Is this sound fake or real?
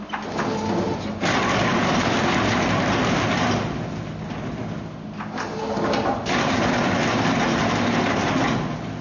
real